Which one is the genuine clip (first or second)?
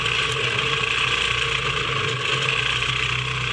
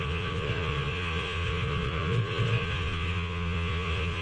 first